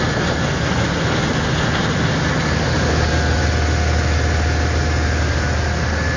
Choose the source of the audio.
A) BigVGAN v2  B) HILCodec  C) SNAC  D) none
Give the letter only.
D